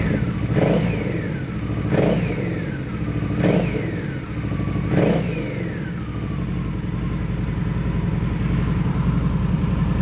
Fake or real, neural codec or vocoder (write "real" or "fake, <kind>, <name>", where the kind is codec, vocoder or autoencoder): real